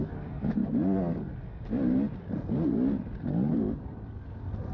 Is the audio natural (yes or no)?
yes